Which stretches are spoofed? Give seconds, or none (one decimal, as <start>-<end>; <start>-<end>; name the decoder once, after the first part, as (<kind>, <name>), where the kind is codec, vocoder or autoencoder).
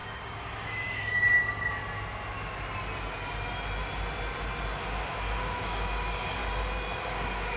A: 0.0-1.8 (codec, DAC); 4.8-6.4; 7.0-7.6